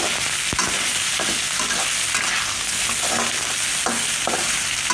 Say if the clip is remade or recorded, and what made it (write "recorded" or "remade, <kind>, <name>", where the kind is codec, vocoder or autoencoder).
recorded